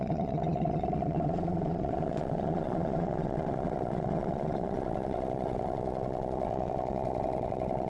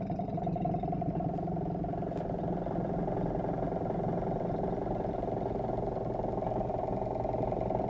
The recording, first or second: second